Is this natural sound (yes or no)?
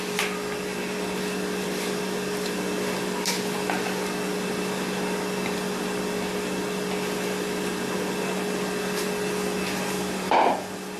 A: yes